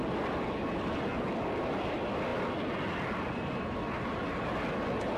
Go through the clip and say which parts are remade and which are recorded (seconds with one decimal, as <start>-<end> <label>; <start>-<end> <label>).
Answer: 0.0-5.2 recorded